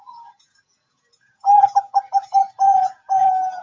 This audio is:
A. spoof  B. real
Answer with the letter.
A